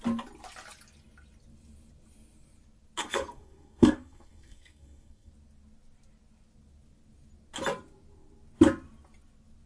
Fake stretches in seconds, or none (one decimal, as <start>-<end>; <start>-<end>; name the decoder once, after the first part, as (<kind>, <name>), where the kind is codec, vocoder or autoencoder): 3.0-5.3 (codec, SNAC)